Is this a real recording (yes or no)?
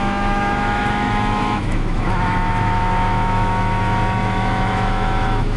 no